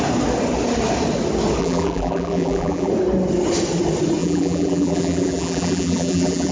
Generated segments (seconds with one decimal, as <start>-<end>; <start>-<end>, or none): 1.6-2.9; 4.2-6.5